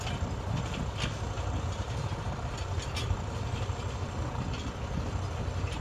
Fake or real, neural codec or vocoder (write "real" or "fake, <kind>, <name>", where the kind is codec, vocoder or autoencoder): real